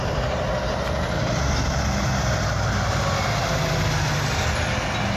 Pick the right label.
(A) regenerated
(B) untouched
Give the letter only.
B